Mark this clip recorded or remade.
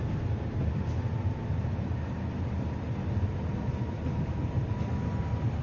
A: recorded